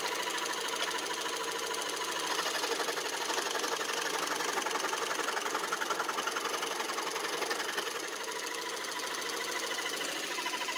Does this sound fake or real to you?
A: real